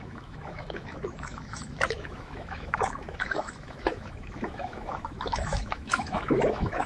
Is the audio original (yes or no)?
no